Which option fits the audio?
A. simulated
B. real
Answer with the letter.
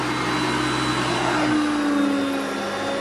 B